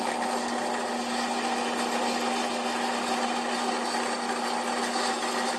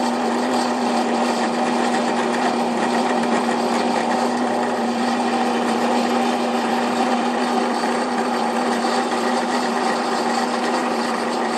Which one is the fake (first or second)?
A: second